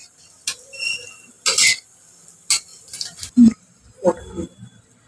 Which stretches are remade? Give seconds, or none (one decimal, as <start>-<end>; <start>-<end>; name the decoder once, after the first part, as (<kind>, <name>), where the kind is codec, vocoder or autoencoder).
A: none